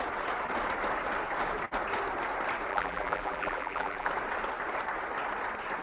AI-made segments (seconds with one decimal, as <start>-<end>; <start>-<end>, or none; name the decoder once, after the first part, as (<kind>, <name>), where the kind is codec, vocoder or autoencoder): 2.7-4.1 (vocoder, BigVGAN v2)